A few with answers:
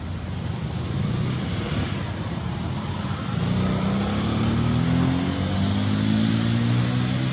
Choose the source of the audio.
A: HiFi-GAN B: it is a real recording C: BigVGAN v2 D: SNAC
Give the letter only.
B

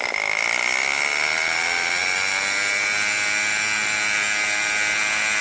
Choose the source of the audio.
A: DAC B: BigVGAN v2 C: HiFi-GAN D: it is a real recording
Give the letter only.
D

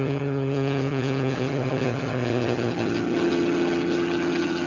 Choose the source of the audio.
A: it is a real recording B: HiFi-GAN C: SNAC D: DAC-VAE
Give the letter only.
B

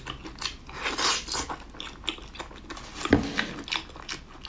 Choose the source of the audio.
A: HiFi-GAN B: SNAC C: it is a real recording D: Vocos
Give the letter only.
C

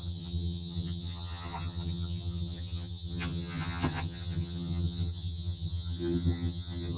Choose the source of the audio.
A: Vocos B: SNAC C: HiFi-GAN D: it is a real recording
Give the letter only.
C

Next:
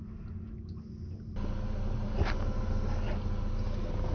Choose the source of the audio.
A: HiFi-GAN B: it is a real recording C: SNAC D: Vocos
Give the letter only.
B